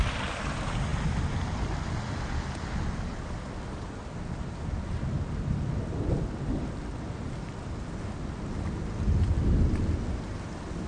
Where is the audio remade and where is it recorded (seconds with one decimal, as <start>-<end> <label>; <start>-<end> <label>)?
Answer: 0.0-10.9 recorded